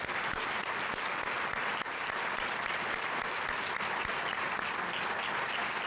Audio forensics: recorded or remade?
recorded